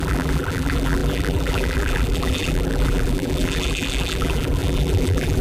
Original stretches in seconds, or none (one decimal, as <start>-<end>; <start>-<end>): none